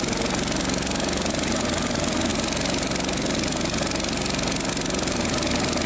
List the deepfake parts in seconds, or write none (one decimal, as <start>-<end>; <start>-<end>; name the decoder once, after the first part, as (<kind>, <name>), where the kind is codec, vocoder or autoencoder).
none